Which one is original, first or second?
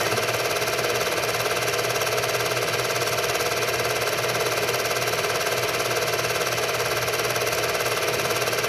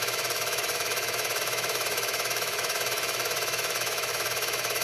first